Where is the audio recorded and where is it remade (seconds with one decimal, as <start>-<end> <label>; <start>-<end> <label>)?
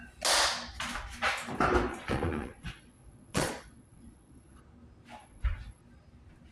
0.0-1.9 recorded; 1.9-4.6 remade; 4.6-5.2 recorded; 5.2-5.8 remade; 5.8-6.5 recorded